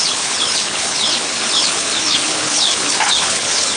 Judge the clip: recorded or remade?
remade